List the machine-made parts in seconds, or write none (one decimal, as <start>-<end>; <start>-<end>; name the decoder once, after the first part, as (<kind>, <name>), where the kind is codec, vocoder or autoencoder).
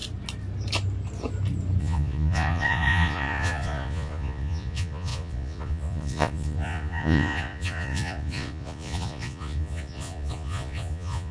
1.8-11.3 (vocoder, Vocos)